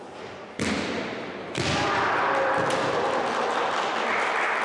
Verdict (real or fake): real